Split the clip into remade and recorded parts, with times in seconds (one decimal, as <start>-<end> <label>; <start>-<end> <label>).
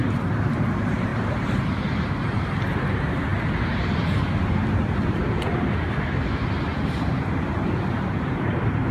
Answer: 0.0-8.9 remade